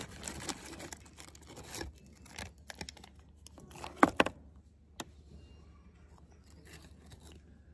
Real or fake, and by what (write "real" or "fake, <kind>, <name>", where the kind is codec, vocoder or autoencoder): real